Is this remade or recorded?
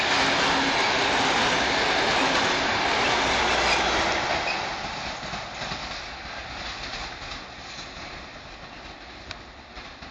recorded